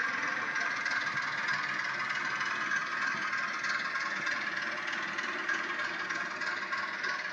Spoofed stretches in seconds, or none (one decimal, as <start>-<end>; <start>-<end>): none